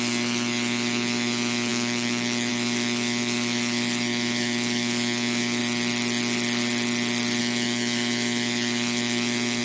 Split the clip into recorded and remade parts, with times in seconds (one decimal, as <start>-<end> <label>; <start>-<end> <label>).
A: 0.0-5.6 remade; 5.6-7.4 recorded; 7.4-9.6 remade